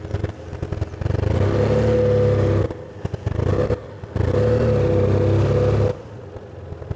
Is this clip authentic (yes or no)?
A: yes